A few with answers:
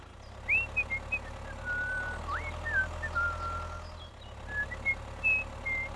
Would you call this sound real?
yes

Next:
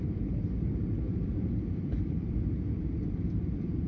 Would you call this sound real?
no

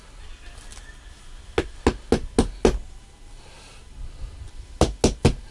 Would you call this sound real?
yes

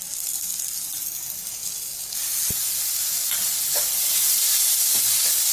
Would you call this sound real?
yes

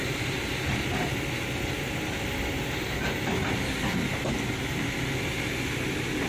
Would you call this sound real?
yes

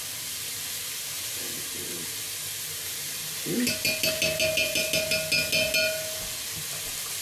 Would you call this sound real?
yes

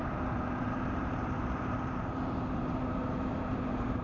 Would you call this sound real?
no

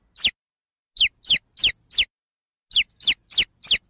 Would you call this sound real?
yes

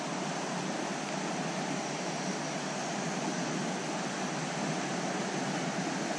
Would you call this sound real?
yes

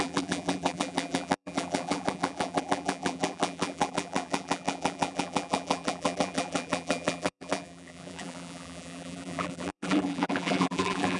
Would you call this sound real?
no